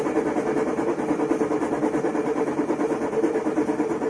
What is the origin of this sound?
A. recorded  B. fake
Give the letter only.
A